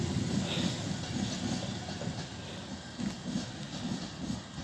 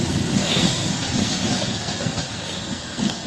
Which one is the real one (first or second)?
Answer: first